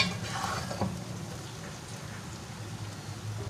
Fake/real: real